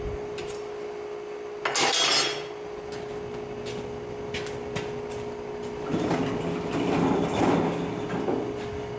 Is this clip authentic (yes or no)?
yes